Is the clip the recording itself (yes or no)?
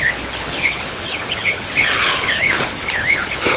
no